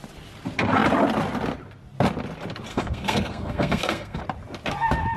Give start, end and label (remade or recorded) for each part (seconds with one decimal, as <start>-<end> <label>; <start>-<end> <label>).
0.0-2.7 recorded; 2.7-4.2 remade; 4.2-5.2 recorded